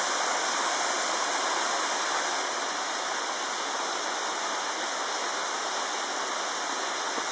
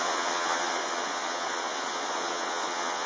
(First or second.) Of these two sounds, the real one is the first